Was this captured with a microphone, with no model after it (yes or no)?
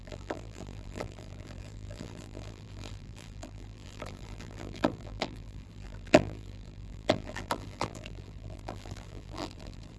no